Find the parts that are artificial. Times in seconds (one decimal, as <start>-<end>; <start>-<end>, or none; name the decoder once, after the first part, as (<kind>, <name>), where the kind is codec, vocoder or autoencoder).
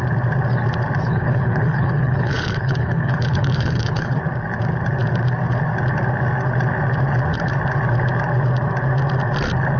1.0-4.2 (codec, HILCodec)